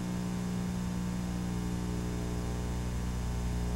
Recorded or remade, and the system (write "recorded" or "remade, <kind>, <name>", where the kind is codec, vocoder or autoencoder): recorded